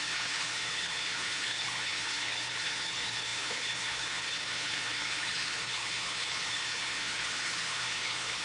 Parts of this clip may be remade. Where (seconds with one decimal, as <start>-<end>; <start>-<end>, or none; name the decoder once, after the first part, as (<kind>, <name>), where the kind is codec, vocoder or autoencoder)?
0.0-8.4 (codec, HILCodec)